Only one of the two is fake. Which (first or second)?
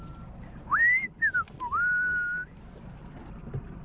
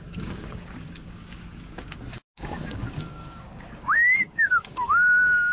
second